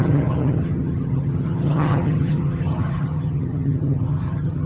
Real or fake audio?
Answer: fake